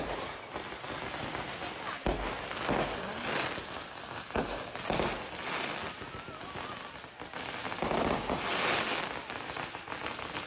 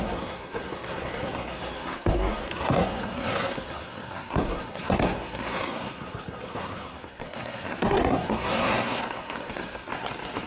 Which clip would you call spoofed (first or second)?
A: second